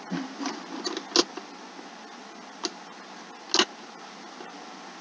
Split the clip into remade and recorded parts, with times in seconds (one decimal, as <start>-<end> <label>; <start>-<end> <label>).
0.0-5.0 recorded